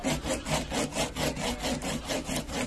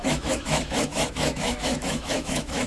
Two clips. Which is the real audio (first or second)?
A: first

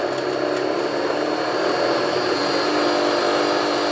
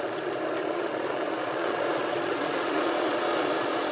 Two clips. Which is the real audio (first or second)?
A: first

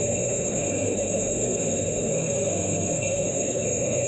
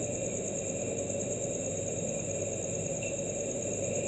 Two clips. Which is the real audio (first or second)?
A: second